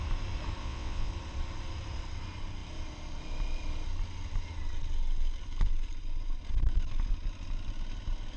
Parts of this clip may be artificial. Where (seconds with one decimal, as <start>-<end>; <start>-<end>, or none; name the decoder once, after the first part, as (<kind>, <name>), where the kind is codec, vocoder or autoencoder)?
0.6-1.1 (vocoder, WaveNeXt)